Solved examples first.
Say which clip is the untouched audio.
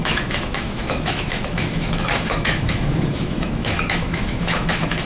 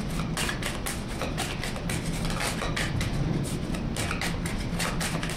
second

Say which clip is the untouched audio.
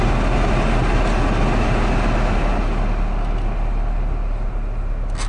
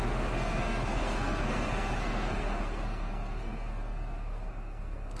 first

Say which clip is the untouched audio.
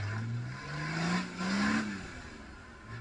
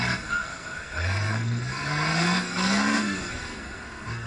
first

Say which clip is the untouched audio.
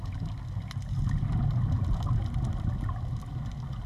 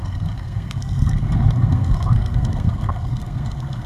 first